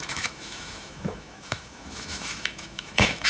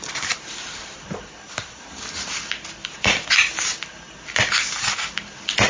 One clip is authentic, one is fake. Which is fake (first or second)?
first